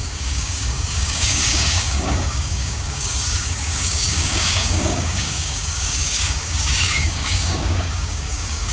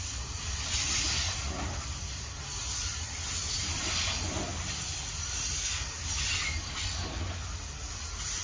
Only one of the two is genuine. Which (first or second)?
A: second